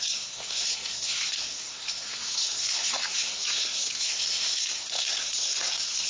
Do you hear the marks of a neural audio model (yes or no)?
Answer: yes